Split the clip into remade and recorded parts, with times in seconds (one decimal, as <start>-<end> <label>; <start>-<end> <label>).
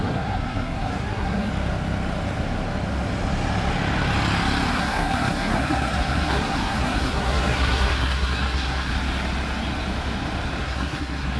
0.0-1.5 remade; 1.5-4.7 recorded; 4.7-8.9 remade; 8.9-10.6 recorded; 10.6-11.4 remade